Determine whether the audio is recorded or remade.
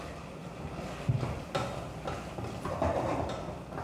recorded